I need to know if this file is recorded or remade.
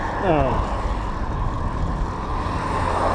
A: recorded